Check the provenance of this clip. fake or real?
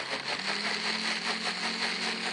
real